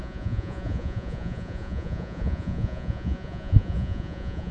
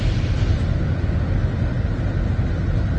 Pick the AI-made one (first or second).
first